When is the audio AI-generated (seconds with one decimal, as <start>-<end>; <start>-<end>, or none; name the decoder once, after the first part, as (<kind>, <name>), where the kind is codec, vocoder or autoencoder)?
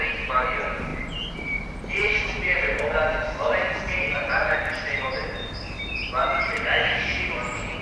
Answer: 0.9-5.0 (vocoder, BigVGAN v2); 6.2-7.0